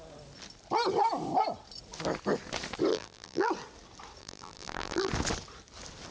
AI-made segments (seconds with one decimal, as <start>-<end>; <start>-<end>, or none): 2.9-3.5; 4.2-5.1